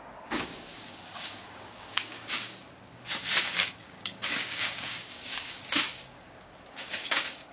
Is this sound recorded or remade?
remade